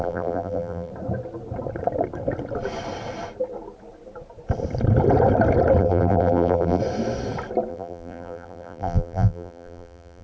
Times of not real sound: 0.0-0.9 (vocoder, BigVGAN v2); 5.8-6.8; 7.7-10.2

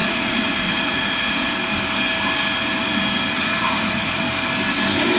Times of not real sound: 0.0-1.5 (vocoder, Vocos); 3.4-4.2

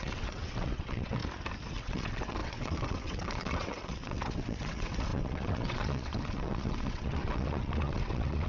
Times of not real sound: 0.0-1.2 (vocoder, WaveNeXt); 1.8-8.5

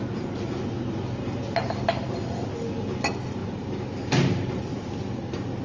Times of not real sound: none

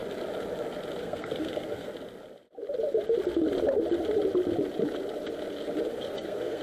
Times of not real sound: 1.0-1.9 (codec, SNAC); 5.9-6.6

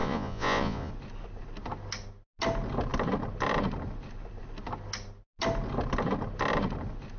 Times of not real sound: 0.0-0.9 (vocoder, Vocos)

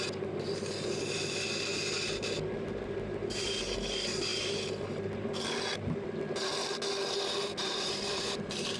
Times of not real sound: 7.6-8.8 (vocoder, BigVGAN v2)